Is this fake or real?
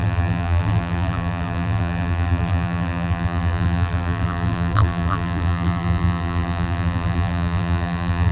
fake